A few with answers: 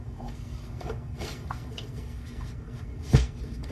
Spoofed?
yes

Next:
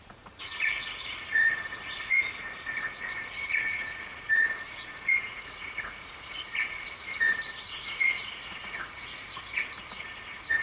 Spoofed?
yes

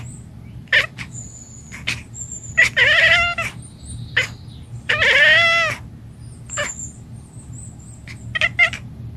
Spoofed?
no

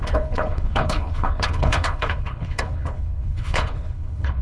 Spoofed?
yes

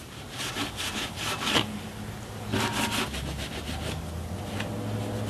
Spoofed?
no